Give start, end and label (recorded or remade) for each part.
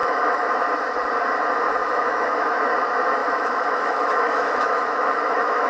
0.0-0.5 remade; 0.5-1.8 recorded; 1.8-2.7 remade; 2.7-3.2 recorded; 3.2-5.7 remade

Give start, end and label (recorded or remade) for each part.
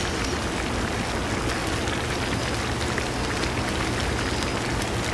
0.0-5.1 recorded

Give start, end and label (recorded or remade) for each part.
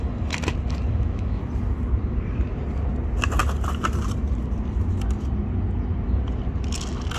0.0-0.9 recorded; 0.9-1.4 remade; 1.4-7.2 recorded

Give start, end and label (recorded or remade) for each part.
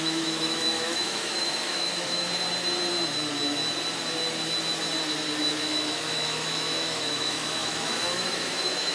0.0-2.3 remade; 2.3-5.4 recorded; 5.4-8.9 remade